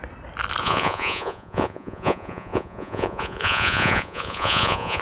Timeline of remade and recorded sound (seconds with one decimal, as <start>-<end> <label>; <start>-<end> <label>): 0.0-0.6 recorded; 0.6-5.0 remade